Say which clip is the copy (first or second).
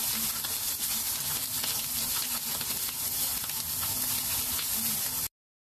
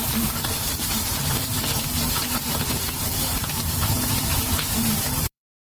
second